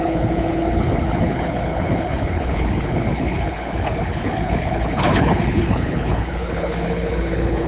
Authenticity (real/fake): fake